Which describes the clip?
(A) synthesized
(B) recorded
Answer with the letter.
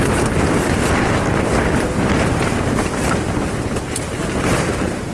B